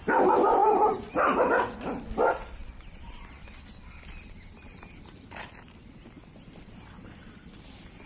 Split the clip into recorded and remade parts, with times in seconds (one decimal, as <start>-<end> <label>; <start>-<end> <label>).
0.0-0.6 recorded; 0.6-1.5 remade; 1.5-2.6 recorded; 2.6-3.3 remade; 3.3-8.1 recorded